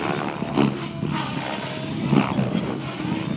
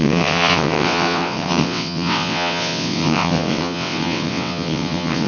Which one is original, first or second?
first